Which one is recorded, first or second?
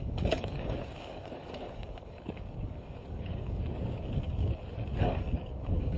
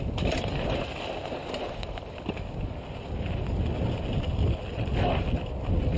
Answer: second